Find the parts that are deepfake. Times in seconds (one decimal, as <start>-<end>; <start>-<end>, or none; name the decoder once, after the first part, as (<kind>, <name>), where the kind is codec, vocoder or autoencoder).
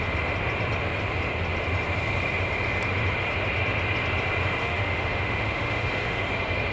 4.6-6.3 (autoencoder, DAC-VAE)